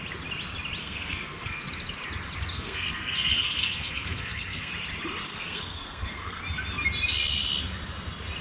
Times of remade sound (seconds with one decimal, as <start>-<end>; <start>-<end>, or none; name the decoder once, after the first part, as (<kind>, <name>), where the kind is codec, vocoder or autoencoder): 0.8-1.7 (codec, SNAC); 2.5-4.7; 5.3-6.4